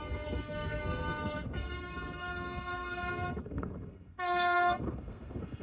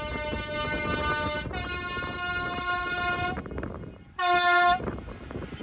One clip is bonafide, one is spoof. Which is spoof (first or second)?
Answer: first